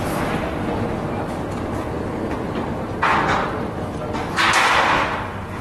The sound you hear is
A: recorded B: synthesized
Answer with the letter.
A